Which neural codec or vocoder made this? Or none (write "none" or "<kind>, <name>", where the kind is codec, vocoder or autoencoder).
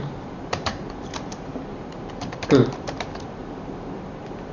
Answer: vocoder, BigVGAN v2